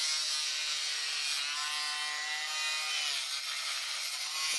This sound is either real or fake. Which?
real